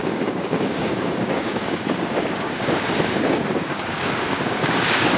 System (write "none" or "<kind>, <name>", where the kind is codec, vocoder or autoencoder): codec, DAC